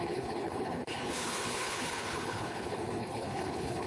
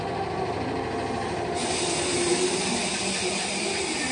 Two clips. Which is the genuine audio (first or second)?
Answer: second